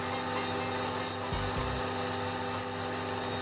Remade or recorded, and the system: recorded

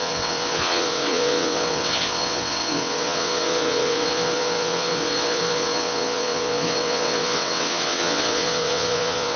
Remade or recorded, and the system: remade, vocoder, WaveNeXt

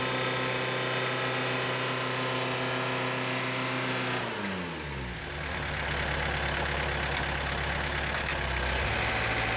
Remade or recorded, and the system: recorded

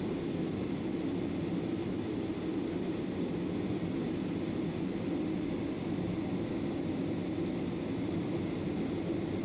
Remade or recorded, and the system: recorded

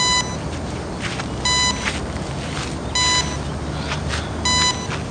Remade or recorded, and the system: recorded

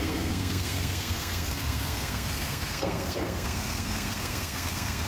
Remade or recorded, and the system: remade, codec, SNAC